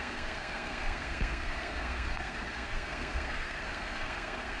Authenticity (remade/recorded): remade